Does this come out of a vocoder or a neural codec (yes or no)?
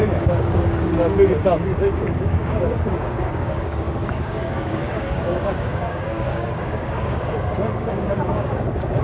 yes